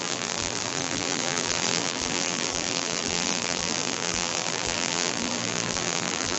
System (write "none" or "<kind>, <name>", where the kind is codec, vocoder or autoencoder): vocoder, BigVGAN v2